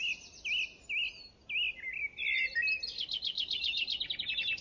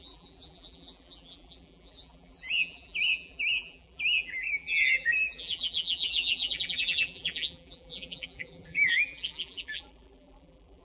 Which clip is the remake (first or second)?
second